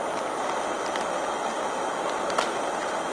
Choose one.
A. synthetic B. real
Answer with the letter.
B